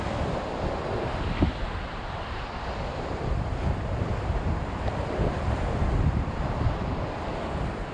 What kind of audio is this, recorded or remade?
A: remade